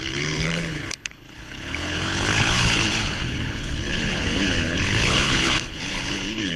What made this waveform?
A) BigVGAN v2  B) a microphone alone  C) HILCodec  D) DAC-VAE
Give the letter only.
C